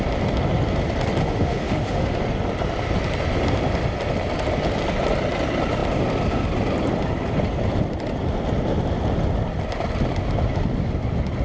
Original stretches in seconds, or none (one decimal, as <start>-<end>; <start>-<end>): 0.0-1.2; 2.2-11.4

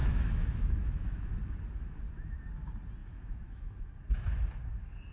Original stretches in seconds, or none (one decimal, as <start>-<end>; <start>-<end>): 1.3-3.0; 3.9-5.1

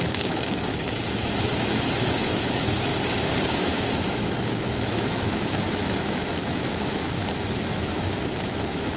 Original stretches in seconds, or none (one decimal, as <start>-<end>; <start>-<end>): 2.9-3.6

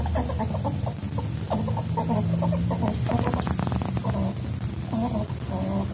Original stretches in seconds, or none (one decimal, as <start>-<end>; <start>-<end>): 0.0-5.9

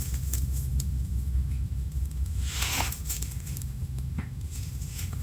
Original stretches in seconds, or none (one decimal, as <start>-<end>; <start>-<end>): none